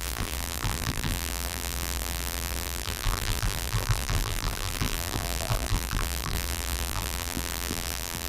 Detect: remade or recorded remade